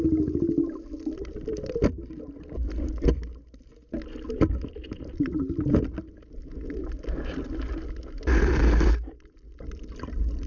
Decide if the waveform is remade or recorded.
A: recorded